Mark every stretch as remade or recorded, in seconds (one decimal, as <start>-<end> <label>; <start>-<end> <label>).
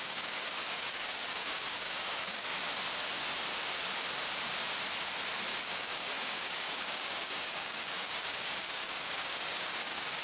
0.0-2.5 remade; 2.5-5.6 recorded; 5.6-10.2 remade